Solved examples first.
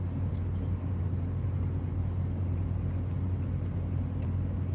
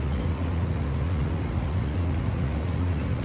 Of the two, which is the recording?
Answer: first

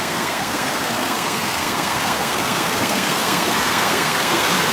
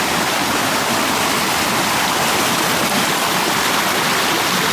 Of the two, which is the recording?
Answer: second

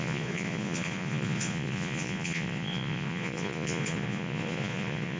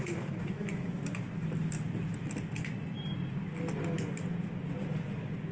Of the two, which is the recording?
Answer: second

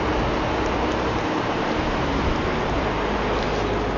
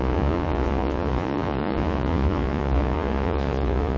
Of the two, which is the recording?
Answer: first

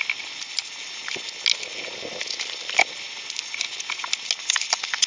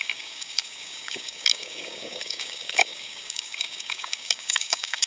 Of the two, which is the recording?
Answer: first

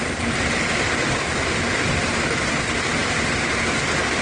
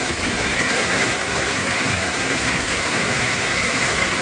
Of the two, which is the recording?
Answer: first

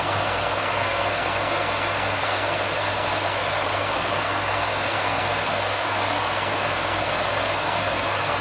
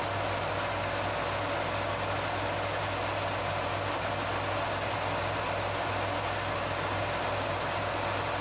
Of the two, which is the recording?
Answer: second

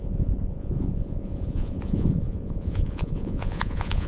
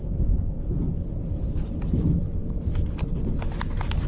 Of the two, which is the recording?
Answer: second